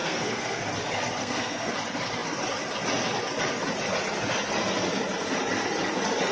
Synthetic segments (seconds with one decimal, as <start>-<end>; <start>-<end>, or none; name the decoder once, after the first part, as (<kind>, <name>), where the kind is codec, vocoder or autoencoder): 0.0-0.6 (codec, SNAC); 1.2-1.7